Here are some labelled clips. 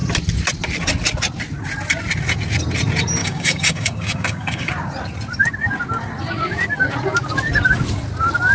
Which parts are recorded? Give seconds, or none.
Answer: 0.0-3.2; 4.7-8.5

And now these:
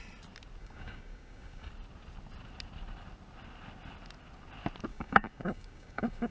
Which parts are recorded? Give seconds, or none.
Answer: 0.0-0.6; 1.7-4.9